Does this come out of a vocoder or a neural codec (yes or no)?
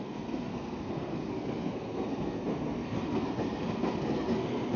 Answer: yes